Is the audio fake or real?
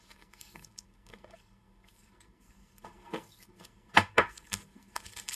fake